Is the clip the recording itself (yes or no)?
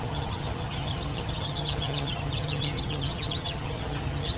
no